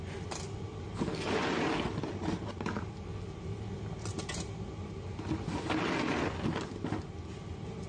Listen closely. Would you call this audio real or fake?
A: real